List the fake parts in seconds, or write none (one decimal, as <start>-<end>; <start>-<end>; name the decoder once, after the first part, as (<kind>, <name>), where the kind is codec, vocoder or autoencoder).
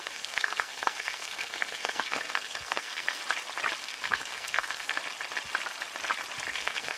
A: 0.0-3.2 (codec, SNAC); 3.8-5.0; 6.5-7.0